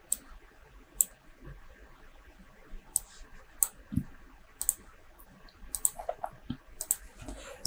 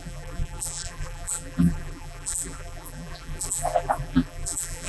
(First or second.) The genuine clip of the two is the first